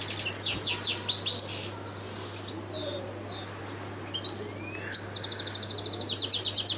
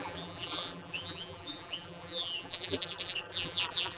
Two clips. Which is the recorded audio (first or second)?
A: first